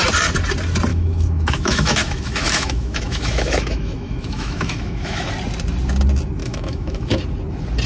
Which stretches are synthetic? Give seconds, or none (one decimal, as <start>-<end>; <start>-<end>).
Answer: 0.9-5.3; 6.4-7.2

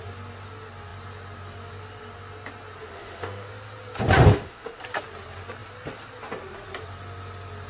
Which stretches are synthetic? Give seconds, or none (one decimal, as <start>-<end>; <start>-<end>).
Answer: 2.8-3.5; 4.3-4.8

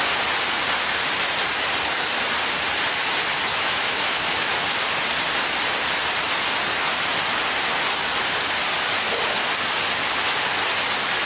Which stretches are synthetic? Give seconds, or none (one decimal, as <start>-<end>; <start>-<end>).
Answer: 3.5-4.5